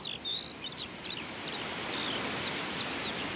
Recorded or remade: recorded